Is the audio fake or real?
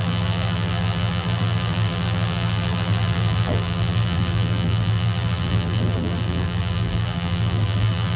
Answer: fake